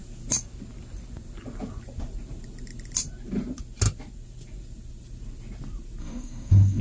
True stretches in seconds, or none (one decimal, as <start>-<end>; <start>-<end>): 0.0-6.0